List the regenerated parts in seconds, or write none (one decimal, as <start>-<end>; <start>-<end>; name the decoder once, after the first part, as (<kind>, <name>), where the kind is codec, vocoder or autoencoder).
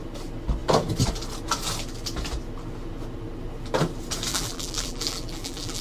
4.3-5.8 (vocoder, BigVGAN v2)